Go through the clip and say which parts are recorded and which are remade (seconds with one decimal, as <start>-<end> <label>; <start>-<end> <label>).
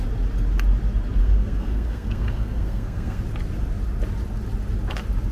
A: 0.0-1.2 recorded; 1.2-3.2 remade; 3.2-5.3 recorded